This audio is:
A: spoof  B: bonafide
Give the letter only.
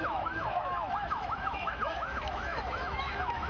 A